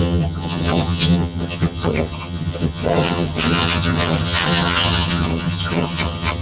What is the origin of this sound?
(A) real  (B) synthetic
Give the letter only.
B